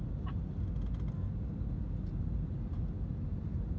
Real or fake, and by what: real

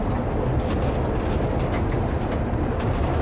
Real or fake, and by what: real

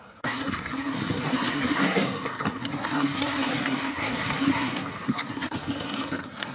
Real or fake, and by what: fake, codec, SNAC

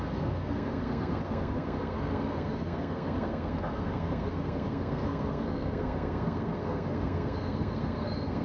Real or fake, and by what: fake, codec, SNAC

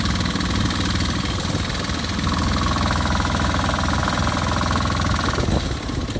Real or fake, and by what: real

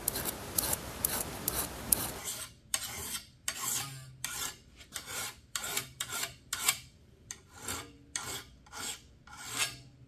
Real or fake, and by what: fake, vocoder, BigVGAN v2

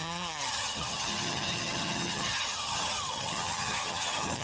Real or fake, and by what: fake, vocoder, HiFi-GAN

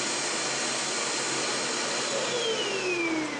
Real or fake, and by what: real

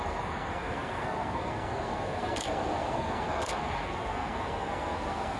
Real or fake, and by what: fake, codec, SNAC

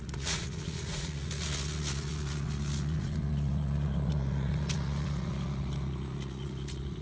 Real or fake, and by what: fake, vocoder, Vocos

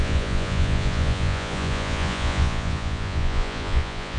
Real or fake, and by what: fake, vocoder, Vocos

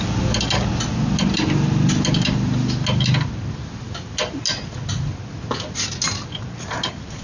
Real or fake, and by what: real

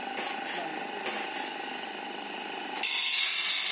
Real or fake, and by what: real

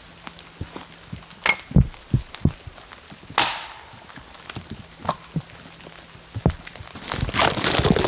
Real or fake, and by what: real